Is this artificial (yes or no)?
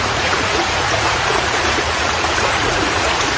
yes